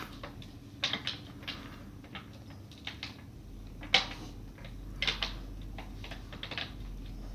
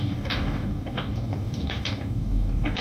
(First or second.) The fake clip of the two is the second